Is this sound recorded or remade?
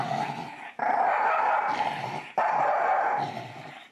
recorded